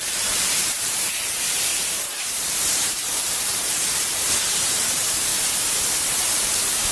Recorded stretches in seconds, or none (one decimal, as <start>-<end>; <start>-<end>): 5.3-6.2